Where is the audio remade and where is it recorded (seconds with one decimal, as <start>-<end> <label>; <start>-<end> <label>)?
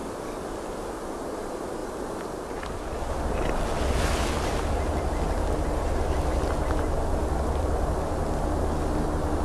0.0-9.4 recorded